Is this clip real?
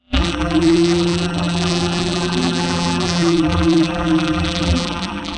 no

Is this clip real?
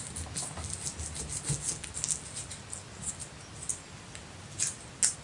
yes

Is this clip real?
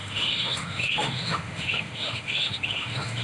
no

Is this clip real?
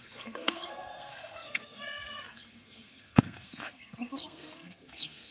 no